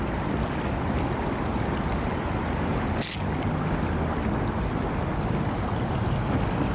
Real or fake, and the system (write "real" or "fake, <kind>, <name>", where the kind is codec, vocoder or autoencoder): real